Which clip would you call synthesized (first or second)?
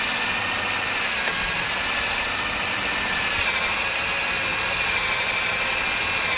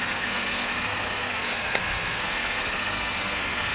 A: second